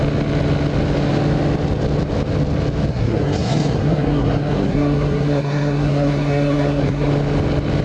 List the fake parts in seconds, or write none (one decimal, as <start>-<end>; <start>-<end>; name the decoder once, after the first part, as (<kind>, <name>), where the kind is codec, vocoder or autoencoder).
2.9-7.1 (codec, SNAC)